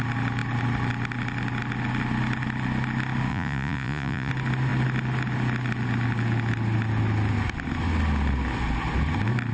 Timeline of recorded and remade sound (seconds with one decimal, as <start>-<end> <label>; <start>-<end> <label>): 0.0-3.3 recorded; 3.3-4.3 remade; 4.3-9.5 recorded